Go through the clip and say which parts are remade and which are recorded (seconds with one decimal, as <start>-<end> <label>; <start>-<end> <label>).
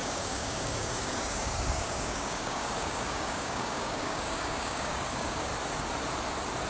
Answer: 0.0-5.5 remade; 5.5-6.7 recorded